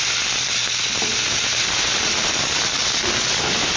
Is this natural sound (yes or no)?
no